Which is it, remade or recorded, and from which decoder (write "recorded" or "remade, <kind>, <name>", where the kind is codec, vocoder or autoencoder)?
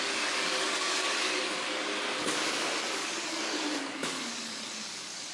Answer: remade, codec, DAC